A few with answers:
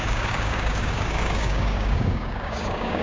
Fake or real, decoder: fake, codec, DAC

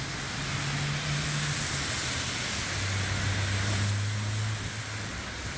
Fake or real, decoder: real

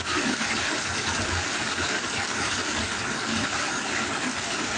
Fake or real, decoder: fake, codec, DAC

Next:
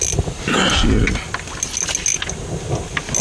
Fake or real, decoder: real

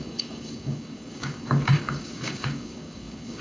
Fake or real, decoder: fake, codec, DAC